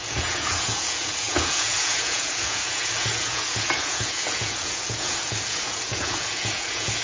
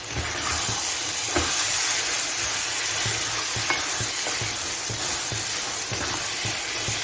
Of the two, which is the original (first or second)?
second